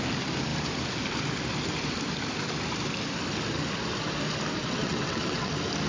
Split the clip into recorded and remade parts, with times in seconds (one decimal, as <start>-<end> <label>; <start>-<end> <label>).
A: 0.0-4.6 recorded; 4.6-5.5 remade; 5.5-5.9 recorded